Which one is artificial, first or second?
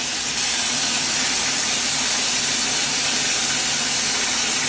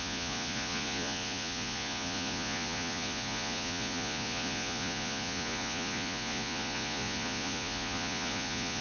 second